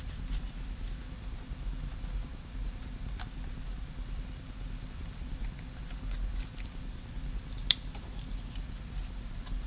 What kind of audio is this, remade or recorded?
remade